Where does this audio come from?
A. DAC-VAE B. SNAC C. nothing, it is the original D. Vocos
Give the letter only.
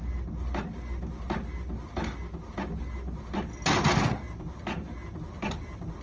C